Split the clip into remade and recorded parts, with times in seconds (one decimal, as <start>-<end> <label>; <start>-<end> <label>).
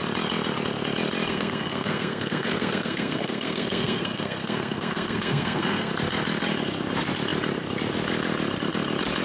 0.0-1.3 recorded; 1.3-5.9 remade; 5.9-9.2 recorded